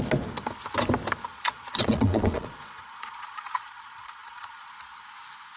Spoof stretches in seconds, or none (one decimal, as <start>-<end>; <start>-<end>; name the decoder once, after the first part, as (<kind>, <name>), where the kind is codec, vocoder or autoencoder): 1.3-4.7 (vocoder, Vocos)